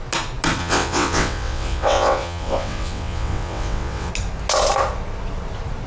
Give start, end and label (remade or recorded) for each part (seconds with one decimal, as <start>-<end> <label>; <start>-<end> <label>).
0.0-0.6 recorded; 0.6-4.1 remade; 4.1-5.9 recorded